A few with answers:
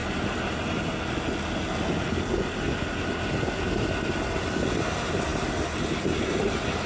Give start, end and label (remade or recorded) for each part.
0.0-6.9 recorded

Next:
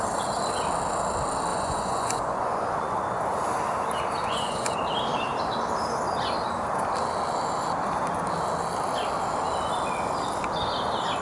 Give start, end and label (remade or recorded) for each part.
0.0-1.5 recorded; 1.5-3.2 remade; 3.2-4.2 recorded; 4.2-4.8 remade; 4.8-11.2 recorded